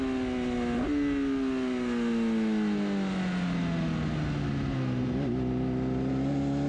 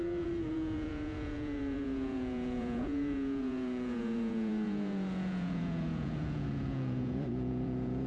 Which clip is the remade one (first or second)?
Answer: second